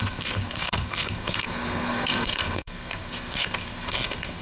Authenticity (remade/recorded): remade